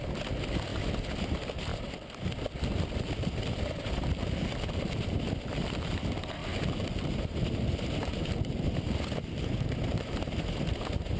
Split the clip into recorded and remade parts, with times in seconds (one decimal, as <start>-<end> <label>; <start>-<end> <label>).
0.0-0.7 recorded; 0.7-1.2 remade; 1.2-1.7 recorded; 1.7-5.7 remade; 5.7-6.4 recorded; 6.4-9.4 remade; 9.4-11.2 recorded